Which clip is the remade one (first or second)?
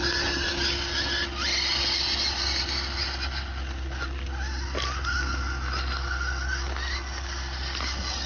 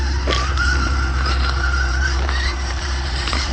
second